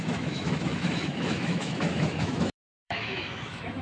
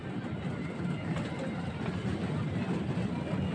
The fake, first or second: first